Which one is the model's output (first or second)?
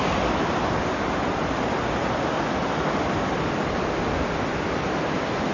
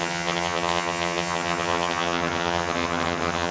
second